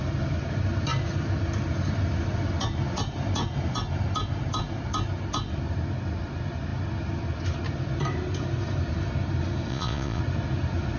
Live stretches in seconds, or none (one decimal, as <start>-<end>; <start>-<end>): 0.0-9.7; 10.2-11.0